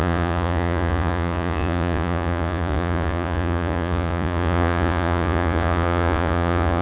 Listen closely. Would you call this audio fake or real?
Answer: fake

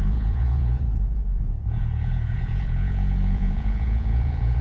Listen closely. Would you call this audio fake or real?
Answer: fake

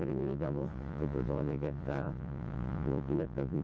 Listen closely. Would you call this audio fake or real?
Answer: fake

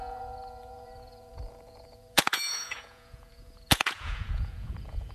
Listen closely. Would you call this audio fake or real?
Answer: fake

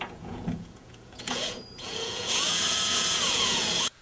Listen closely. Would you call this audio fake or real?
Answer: fake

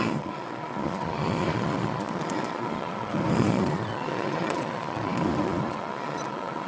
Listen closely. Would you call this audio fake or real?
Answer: fake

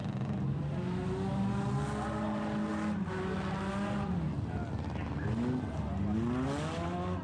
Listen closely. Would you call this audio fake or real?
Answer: real